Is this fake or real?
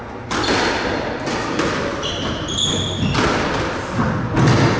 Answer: real